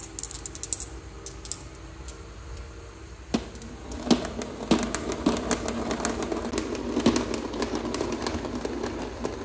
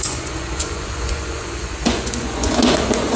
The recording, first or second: first